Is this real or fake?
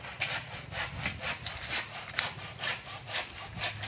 real